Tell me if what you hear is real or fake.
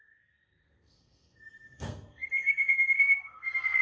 fake